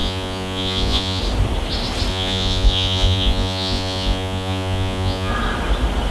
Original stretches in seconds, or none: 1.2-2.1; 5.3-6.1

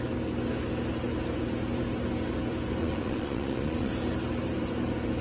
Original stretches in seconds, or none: 0.0-2.8; 3.9-5.2